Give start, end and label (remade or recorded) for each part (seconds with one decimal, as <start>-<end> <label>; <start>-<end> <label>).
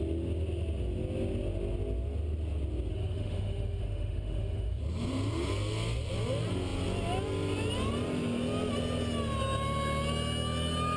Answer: 0.0-2.9 recorded; 2.9-4.8 remade; 4.8-11.0 recorded